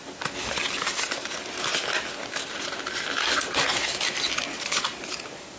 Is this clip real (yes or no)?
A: yes